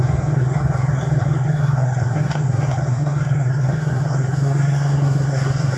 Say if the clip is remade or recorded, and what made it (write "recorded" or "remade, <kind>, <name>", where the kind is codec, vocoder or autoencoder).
remade, codec, SNAC